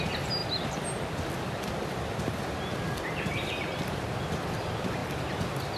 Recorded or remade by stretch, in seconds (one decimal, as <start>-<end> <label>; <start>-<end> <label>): 0.0-5.8 recorded